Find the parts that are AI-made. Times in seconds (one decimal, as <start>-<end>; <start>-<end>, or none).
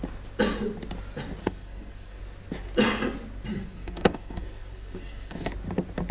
1.4-2.2; 3.5-5.5